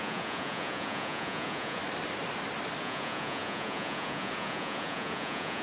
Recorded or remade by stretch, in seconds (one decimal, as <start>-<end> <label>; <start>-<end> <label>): 0.0-1.8 remade; 1.8-2.8 recorded; 2.8-5.6 remade